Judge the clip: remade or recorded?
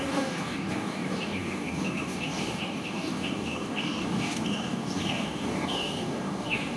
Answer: remade